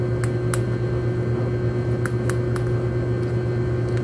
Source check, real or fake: real